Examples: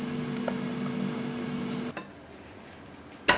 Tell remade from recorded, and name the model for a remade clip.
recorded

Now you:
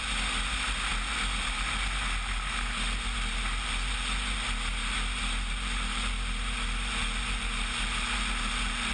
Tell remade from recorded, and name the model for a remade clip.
recorded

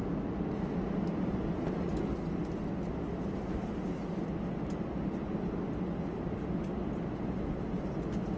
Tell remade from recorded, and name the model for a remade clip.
recorded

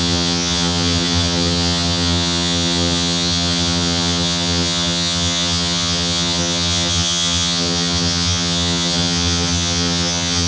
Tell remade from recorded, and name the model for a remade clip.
remade, vocoder, HiFi-GAN